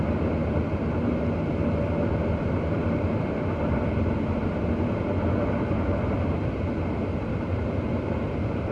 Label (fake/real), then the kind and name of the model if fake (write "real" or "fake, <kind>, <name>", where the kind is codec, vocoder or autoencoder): real